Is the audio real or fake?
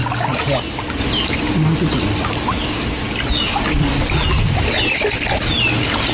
real